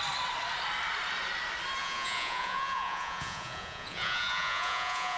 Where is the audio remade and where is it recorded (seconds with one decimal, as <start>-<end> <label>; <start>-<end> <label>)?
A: 0.0-1.8 recorded; 1.8-5.2 remade

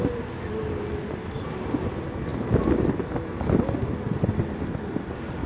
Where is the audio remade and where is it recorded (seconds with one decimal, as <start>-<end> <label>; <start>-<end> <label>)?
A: 0.0-5.5 recorded

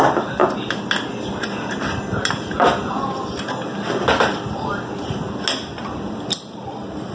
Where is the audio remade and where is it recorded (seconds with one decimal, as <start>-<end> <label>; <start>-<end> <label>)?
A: 0.0-7.1 recorded

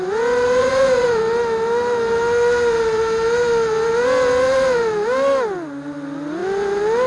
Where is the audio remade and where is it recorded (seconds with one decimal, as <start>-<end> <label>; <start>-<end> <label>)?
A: 0.0-0.6 recorded; 0.6-1.2 remade; 1.2-7.1 recorded

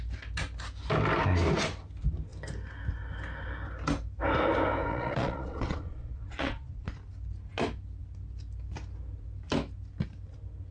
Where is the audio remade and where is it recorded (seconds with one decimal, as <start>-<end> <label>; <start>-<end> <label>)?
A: 0.0-4.9 recorded; 4.9-6.9 remade; 6.9-10.7 recorded

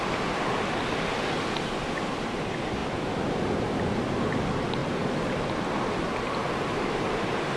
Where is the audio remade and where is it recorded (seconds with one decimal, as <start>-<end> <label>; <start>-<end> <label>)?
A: 0.0-7.6 recorded